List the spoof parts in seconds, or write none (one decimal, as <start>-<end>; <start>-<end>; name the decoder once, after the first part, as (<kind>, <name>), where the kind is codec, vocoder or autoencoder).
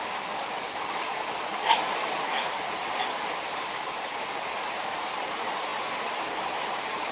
none